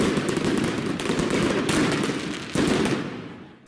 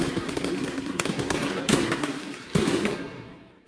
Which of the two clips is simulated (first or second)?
second